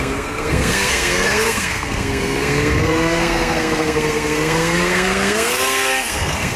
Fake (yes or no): yes